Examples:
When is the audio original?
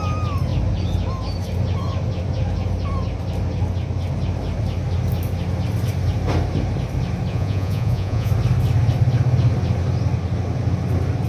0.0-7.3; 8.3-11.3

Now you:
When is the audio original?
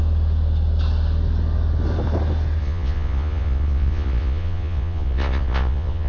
0.0-2.6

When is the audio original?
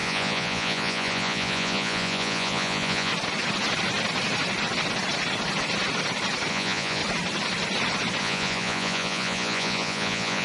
3.1-6.5; 7.0-8.2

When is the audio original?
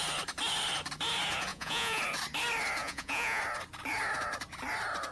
0.0-1.5; 2.0-2.8; 3.4-5.1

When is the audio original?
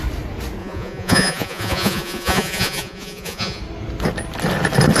0.0-0.6; 3.6-5.0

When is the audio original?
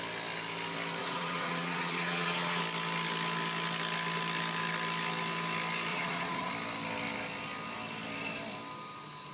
0.0-1.0; 2.6-5.9; 6.5-9.3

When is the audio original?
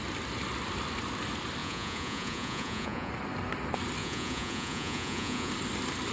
0.0-1.6; 3.1-4.0; 5.5-6.1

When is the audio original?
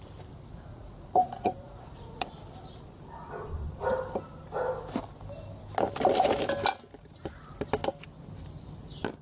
0.0-0.7; 2.3-9.2